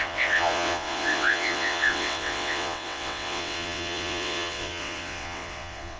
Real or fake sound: fake